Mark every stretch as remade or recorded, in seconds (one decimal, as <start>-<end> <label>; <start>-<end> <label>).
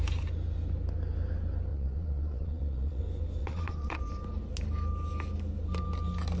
0.0-1.7 recorded; 1.7-3.0 remade; 3.0-3.4 recorded; 3.4-4.0 remade; 4.0-6.4 recorded